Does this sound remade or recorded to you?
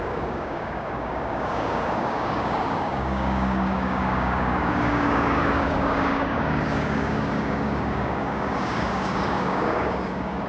remade